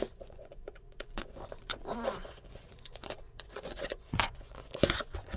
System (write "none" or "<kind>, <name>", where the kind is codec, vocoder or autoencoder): vocoder, Vocos